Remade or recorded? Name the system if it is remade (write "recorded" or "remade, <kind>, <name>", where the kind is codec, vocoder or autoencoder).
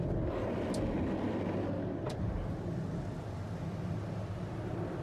recorded